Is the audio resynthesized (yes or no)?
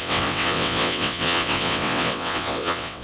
yes